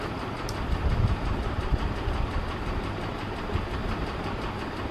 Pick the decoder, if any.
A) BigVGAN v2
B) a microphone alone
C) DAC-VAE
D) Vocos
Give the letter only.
B